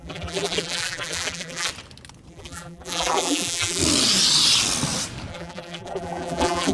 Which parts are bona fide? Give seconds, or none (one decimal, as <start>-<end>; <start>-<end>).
1.7-2.3; 3.8-5.3